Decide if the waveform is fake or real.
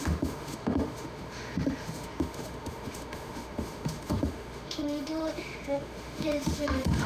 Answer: fake